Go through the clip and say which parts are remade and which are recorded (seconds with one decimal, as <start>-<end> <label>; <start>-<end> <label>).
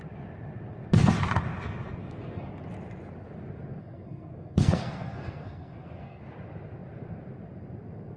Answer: 0.0-2.0 recorded; 2.0-2.5 remade; 2.5-3.8 recorded; 3.8-6.2 remade; 6.2-8.2 recorded